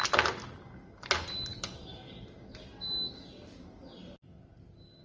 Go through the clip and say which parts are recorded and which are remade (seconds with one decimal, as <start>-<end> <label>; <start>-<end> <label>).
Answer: 0.0-5.0 recorded